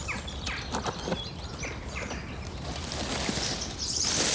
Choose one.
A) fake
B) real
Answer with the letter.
B